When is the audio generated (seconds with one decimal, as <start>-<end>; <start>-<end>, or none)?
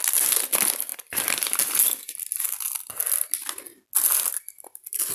none